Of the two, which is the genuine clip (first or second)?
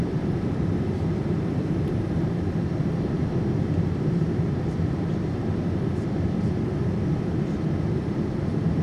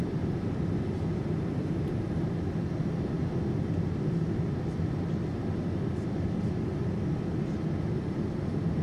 second